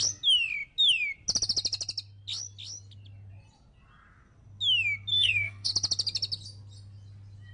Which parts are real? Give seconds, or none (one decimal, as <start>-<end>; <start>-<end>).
0.0-5.1; 5.7-7.5